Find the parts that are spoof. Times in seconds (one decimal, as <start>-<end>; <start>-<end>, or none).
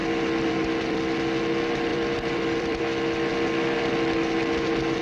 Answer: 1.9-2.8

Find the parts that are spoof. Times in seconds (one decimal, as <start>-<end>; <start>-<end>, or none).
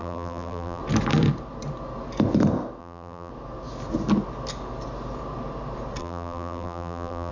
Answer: 0.0-0.8; 2.8-3.3; 6.0-7.3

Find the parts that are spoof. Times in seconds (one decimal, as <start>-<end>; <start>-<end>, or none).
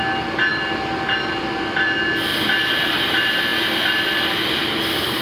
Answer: 2.3-2.9; 3.5-4.5